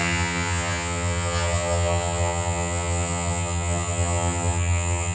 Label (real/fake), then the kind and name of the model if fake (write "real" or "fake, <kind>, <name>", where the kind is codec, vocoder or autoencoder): fake, vocoder, HiFi-GAN